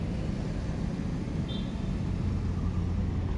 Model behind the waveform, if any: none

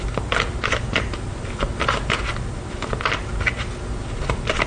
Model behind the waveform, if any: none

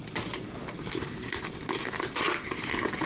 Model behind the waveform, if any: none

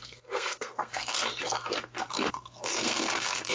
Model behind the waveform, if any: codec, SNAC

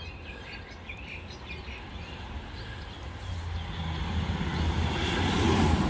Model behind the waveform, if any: none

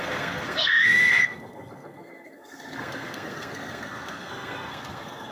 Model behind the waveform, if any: codec, SNAC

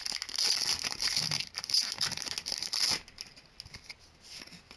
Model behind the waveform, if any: none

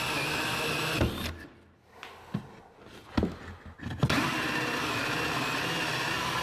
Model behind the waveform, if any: none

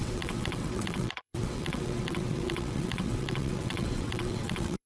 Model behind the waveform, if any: vocoder, WaveNeXt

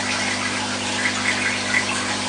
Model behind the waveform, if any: none